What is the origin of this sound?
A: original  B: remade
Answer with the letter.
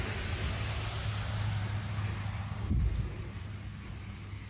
A